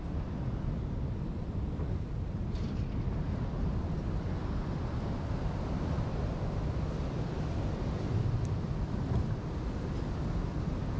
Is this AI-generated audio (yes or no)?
no